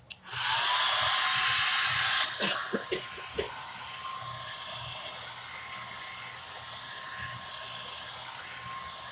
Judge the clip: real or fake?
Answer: real